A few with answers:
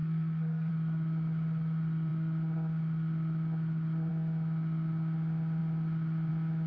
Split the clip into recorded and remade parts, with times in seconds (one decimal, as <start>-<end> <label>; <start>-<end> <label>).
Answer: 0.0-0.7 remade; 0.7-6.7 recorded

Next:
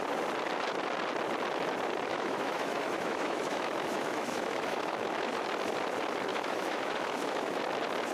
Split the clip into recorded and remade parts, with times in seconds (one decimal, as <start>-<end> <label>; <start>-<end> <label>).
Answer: 0.0-2.1 recorded; 2.1-5.3 remade; 5.3-6.3 recorded; 6.3-7.6 remade; 7.6-8.1 recorded

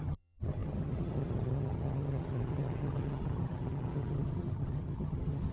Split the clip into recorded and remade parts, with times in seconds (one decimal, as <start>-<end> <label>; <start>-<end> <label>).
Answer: 0.0-5.5 remade